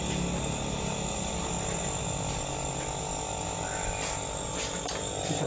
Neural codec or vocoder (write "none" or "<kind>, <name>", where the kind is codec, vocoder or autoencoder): none